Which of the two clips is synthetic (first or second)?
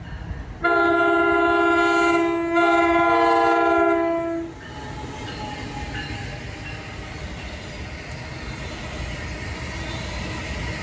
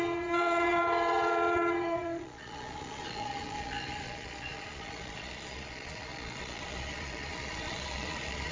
second